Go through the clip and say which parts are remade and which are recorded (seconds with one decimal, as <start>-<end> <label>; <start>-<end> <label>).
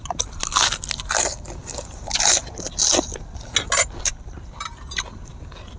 0.0-5.8 recorded